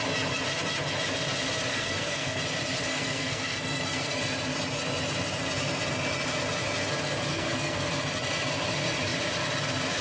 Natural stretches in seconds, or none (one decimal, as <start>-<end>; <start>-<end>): 0.0-1.7; 2.4-2.9; 4.2-7.3; 7.9-10.0